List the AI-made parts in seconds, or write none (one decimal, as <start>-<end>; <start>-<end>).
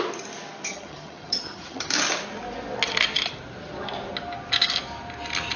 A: 0.7-1.9